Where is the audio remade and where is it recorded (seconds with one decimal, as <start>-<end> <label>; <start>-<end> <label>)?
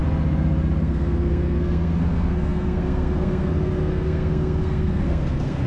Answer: 0.0-0.8 recorded; 0.8-5.7 remade